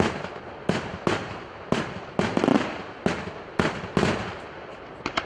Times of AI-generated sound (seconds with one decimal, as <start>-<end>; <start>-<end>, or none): 0.9-1.7; 2.5-3.1; 4.2-5.3